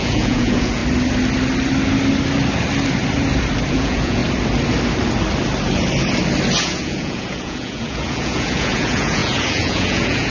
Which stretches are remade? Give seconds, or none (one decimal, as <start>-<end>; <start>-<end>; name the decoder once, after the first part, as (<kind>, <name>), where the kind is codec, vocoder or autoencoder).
0.0-0.8 (vocoder, Vocos); 3.7-4.2; 6.6-10.3